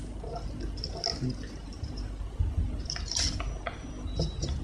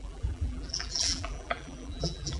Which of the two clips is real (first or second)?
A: first